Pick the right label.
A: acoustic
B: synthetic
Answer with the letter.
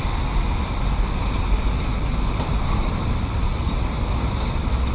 A